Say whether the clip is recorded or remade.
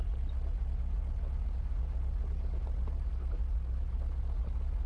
recorded